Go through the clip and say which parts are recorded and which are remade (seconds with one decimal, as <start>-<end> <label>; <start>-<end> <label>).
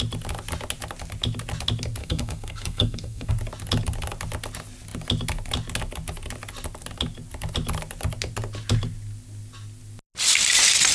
0.0-2.0 recorded; 2.0-3.3 remade; 3.3-10.9 recorded